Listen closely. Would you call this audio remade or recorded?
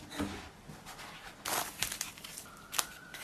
recorded